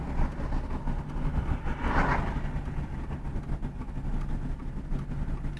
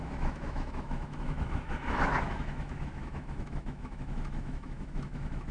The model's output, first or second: second